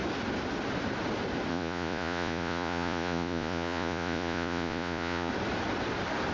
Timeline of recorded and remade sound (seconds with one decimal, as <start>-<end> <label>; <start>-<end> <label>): 0.0-1.5 recorded; 1.5-5.3 remade; 5.3-6.3 recorded